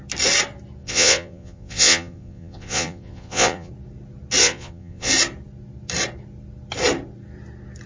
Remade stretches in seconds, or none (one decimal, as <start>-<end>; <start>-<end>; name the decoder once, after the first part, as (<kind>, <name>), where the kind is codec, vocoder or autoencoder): 0.8-3.7 (vocoder, Vocos); 4.4-5.1